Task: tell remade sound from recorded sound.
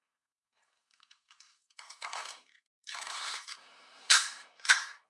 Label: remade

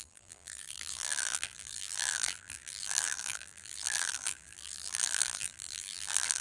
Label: remade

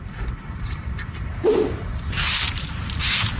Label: remade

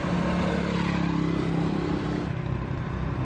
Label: recorded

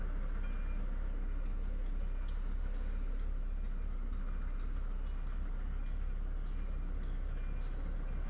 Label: recorded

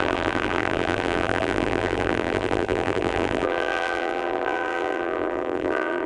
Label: remade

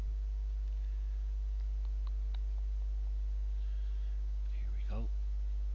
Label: recorded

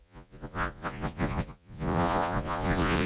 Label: remade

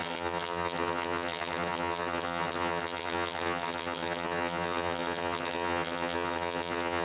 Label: remade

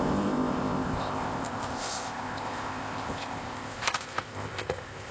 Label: remade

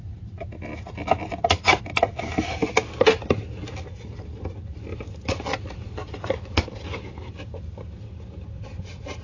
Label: recorded